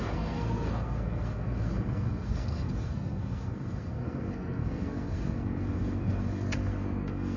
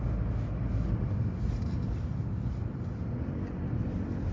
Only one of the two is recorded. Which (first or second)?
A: second